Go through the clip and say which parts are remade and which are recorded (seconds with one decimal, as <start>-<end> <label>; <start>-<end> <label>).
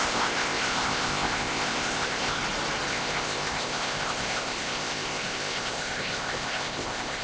0.0-2.4 remade; 2.4-2.9 recorded; 2.9-7.2 remade